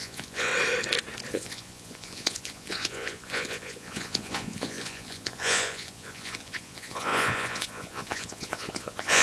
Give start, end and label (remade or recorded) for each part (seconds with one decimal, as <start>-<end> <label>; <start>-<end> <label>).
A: 0.0-0.5 remade; 0.5-1.3 recorded; 1.3-9.2 remade